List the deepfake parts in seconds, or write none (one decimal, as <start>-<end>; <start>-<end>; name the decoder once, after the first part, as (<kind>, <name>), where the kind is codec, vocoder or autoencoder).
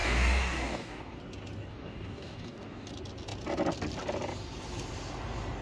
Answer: 0.0-1.2 (codec, DAC); 1.7-2.9